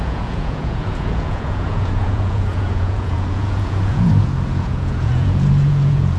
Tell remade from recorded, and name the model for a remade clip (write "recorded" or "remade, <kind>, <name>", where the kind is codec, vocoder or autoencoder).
remade, vocoder, Vocos